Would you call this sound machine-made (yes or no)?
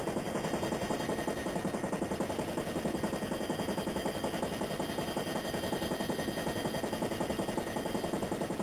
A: no